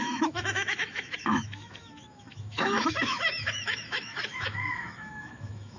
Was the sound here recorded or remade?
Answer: remade